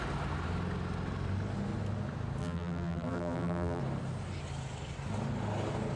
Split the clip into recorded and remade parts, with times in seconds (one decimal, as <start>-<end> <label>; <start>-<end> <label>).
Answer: 0.0-2.4 recorded; 2.4-3.8 remade; 3.8-6.0 recorded